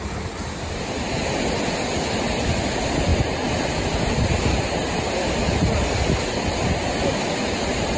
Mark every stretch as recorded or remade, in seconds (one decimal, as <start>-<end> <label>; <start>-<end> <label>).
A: 0.0-8.0 recorded